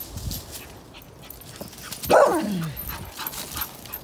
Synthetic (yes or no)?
no